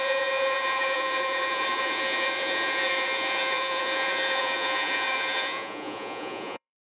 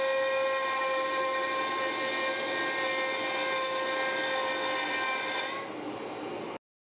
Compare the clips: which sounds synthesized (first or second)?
first